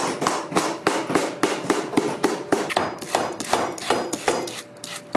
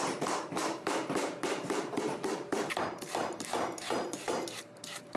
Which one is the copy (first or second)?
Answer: second